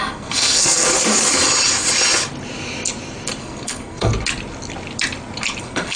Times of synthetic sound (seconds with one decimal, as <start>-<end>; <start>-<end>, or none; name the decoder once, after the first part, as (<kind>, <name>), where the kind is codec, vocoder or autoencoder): 0.0-0.9 (codec, SNAC); 3.4-4.1; 5.6-6.0